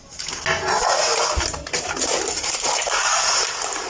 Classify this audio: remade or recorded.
recorded